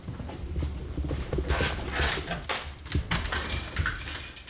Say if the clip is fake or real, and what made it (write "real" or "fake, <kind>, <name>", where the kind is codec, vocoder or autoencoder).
real